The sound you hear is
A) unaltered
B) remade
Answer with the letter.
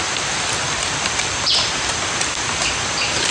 A